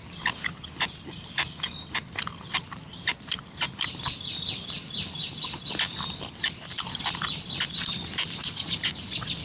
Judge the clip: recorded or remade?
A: recorded